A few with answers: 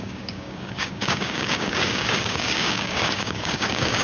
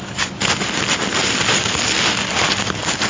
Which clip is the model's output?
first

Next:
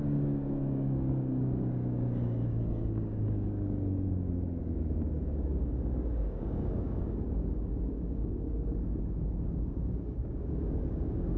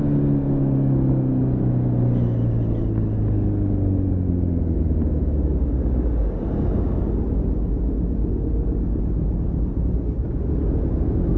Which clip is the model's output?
first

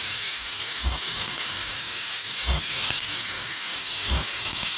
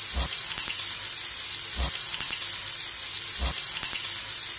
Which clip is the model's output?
first